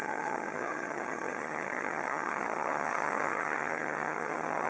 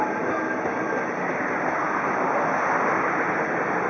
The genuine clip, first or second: second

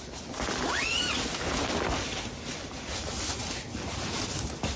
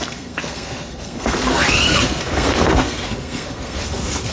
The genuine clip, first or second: first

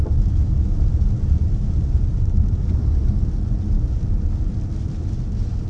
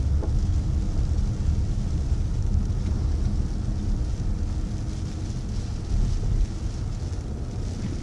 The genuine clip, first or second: second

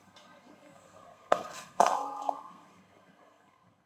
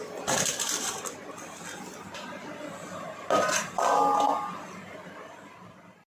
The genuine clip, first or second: second